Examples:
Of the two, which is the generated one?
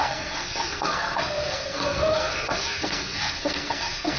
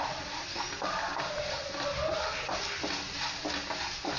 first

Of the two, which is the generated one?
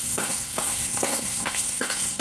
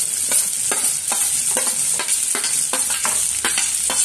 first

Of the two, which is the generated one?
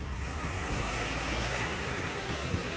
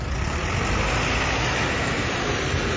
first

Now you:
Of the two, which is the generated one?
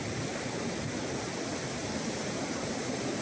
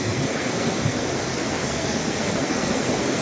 second